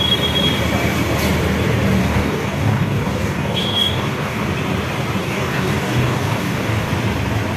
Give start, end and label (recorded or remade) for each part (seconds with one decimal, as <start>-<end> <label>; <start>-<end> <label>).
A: 0.0-2.0 recorded; 2.0-4.5 remade; 4.5-5.2 recorded; 5.2-6.9 remade; 6.9-7.6 recorded